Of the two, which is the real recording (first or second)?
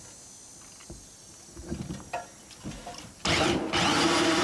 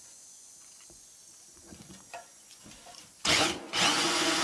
first